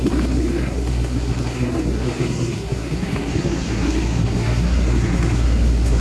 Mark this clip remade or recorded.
remade